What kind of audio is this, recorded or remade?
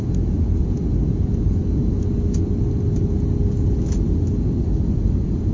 recorded